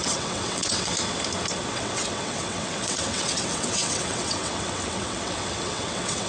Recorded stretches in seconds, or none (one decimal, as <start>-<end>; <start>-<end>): 0.9-1.7